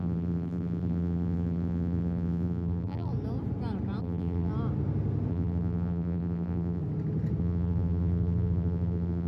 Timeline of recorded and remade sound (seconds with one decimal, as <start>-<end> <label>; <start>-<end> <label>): 0.0-3.1 remade; 3.1-4.0 recorded; 4.0-4.5 remade; 4.5-5.3 recorded; 5.3-6.8 remade; 6.8-7.4 recorded; 7.4-9.3 remade